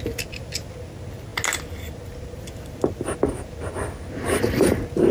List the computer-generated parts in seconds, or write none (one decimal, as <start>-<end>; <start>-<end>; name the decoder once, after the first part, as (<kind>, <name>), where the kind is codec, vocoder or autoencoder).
none